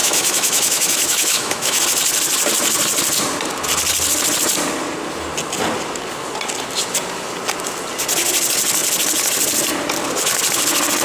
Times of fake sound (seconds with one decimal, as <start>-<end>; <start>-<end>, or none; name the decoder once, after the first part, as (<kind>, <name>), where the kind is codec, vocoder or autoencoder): 0.0-1.8 (autoencoder, DAC-VAE)